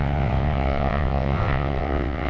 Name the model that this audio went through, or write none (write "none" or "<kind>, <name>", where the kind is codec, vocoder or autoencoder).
vocoder, WaveNeXt